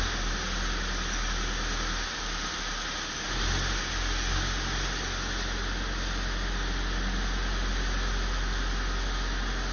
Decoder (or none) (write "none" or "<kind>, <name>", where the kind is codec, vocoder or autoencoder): none